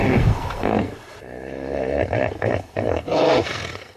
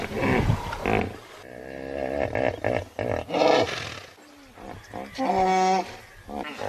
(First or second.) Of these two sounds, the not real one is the first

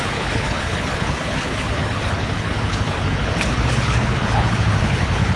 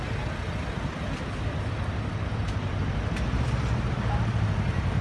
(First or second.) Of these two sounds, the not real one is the first